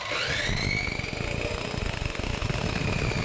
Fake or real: real